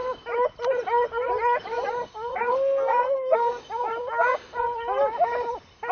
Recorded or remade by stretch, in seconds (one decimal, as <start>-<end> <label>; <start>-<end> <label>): 0.0-2.3 recorded; 2.3-3.6 remade; 3.6-5.9 recorded